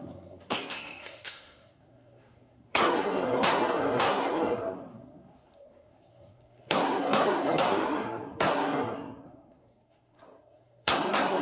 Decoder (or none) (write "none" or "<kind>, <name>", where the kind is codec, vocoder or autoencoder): codec, SNAC